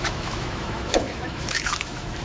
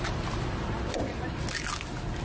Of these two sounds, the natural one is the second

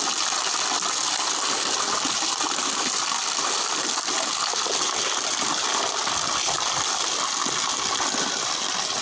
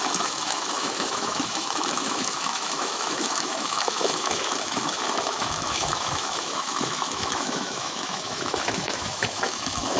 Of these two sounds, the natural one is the first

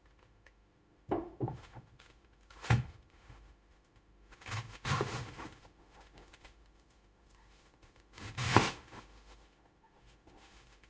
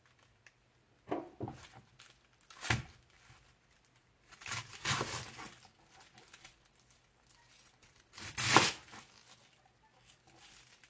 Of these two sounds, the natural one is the second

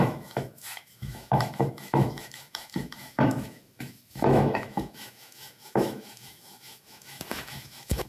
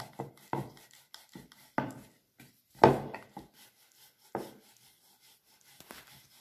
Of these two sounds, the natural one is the second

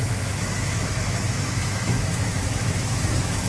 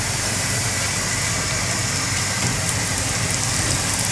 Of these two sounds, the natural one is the second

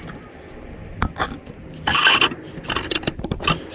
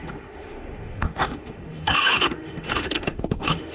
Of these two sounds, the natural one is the first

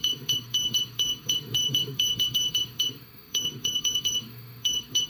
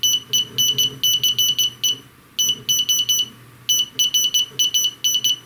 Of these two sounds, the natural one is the second